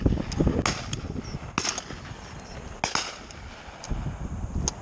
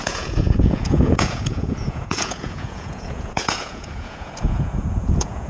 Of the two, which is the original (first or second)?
first